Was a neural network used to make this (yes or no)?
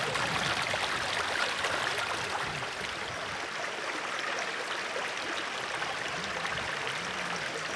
no